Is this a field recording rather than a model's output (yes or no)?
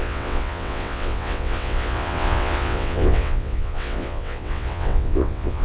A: no